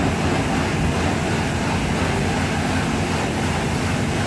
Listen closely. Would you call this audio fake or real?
real